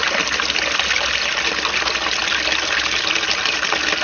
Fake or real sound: real